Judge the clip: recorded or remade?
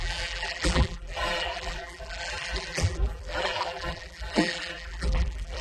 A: remade